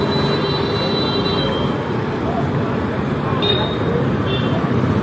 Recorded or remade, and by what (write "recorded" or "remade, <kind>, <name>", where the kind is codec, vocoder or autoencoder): recorded